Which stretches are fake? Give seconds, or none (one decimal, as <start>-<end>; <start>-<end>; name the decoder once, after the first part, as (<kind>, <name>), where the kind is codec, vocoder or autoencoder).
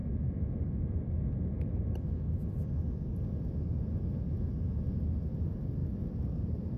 5.8-6.8 (vocoder, BigVGAN v2)